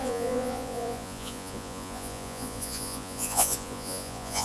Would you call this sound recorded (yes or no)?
no